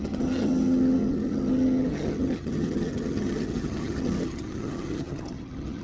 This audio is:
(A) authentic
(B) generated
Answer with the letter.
B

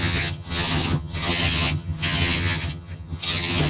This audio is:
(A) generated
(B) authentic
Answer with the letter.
A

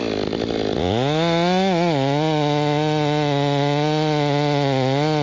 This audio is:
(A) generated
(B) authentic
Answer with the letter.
B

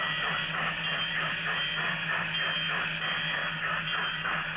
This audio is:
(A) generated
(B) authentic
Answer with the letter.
B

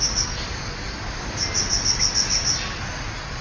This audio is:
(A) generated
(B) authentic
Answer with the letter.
B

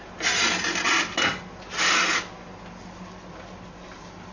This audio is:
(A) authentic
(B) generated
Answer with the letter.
A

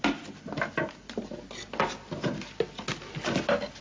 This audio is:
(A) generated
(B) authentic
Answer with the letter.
B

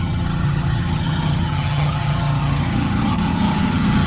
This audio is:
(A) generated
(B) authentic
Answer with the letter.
A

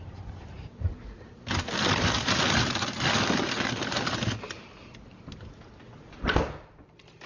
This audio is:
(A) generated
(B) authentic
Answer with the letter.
B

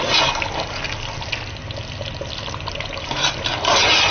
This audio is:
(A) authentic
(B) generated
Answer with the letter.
A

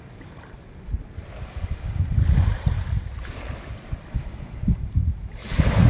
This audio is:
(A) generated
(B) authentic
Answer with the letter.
B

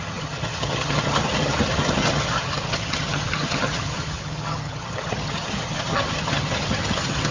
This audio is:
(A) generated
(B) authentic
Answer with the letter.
A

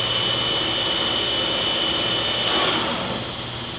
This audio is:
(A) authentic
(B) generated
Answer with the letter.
A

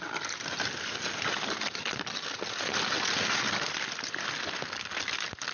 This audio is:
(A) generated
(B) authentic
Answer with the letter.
B